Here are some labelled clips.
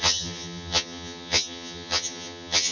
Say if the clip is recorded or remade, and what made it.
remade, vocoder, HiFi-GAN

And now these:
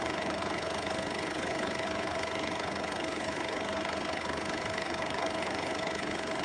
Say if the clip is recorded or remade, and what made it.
remade, codec, HILCodec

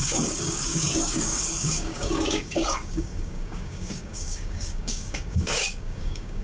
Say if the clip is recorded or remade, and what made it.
remade, codec, DAC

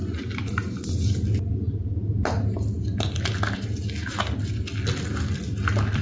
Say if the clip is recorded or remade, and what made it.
recorded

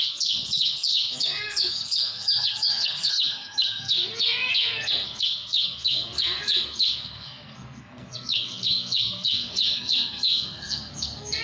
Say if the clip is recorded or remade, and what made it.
remade, codec, SNAC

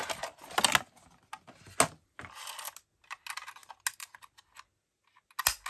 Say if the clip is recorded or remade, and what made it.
recorded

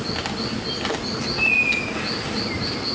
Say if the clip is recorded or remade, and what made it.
recorded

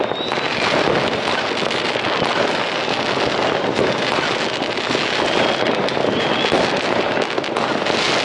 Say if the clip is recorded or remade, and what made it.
recorded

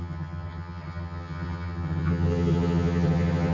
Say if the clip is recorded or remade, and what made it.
remade, vocoder, HiFi-GAN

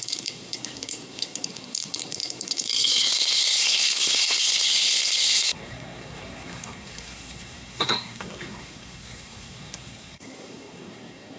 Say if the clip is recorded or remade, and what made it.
remade, codec, SNAC